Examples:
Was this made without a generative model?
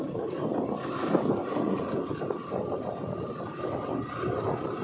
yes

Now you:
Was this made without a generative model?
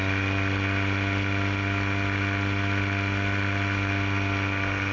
yes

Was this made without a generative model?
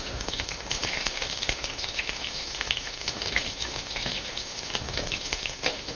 no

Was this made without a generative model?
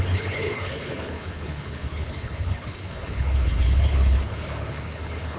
no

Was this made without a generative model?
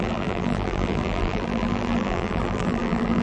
no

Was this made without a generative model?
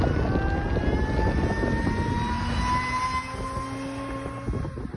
yes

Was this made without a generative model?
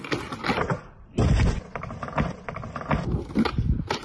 yes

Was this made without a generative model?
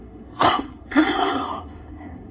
no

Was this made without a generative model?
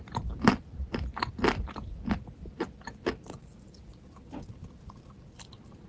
yes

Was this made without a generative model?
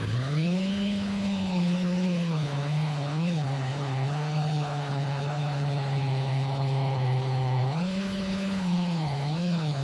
no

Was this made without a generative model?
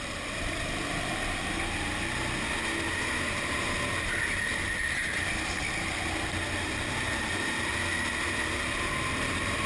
yes